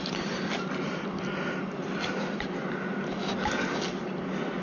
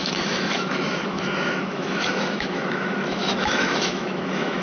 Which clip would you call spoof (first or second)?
second